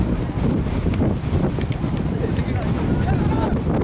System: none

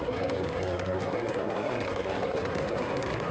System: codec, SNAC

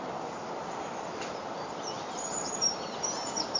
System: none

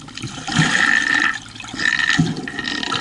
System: none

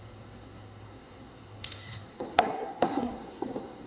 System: codec, SNAC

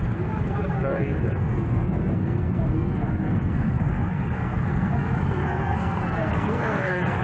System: codec, SNAC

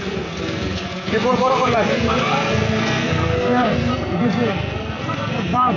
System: codec, SNAC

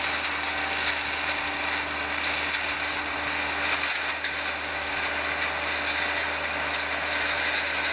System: none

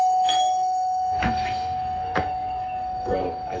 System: codec, SNAC